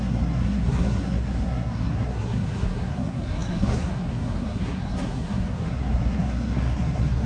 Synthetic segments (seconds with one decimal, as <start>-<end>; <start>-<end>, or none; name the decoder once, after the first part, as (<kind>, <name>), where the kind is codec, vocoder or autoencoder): 0.0-7.3 (codec, SNAC)